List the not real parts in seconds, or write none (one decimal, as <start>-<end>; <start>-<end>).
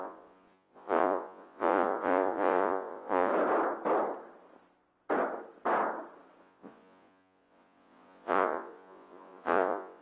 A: 0.0-3.3; 6.4-10.0